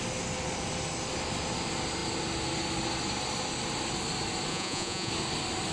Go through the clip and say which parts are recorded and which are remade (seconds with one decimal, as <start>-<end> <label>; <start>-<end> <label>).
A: 0.0-4.5 recorded; 4.5-5.1 remade; 5.1-5.7 recorded